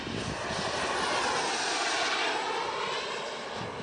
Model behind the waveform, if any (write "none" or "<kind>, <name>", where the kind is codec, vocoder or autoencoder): none